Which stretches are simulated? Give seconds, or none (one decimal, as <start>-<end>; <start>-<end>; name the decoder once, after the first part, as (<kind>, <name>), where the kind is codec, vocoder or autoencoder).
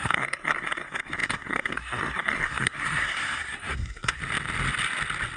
0.0-4.2 (codec, SNAC)